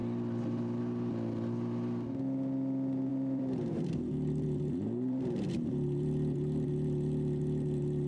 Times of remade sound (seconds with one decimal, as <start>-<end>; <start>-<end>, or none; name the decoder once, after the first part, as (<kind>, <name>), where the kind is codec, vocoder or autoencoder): 3.1-8.1 (vocoder, BigVGAN v2)